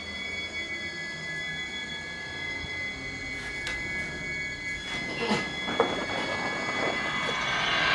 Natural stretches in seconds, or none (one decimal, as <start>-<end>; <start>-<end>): 0.0-7.9